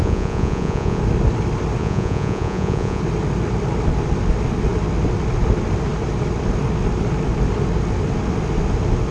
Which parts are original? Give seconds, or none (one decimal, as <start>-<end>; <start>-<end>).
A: 1.0-1.8; 3.0-9.1

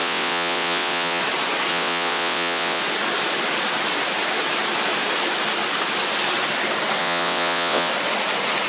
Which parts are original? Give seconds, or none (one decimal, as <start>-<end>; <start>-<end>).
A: 1.2-1.7; 2.8-7.0; 7.9-8.7

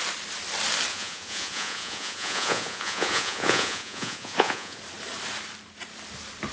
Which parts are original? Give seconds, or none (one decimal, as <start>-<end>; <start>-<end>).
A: 0.0-0.9; 4.8-6.5

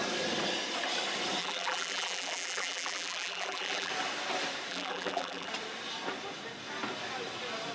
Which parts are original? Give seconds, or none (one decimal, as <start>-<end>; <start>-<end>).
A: 0.0-1.4; 3.9-4.7; 5.5-7.7

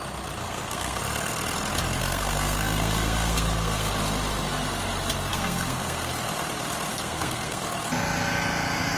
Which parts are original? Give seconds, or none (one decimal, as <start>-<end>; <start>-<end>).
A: 0.0-0.4; 1.0-2.0; 3.9-5.3; 6.1-6.9; 7.6-9.0